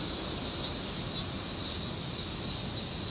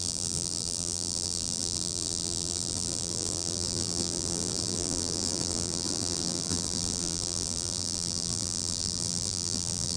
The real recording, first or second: first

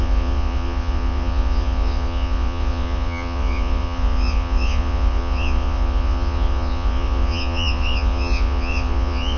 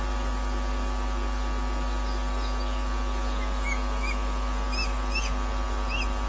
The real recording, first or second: second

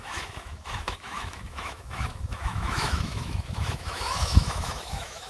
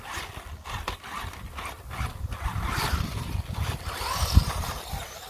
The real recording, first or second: second